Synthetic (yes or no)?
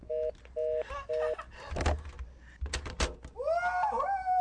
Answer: no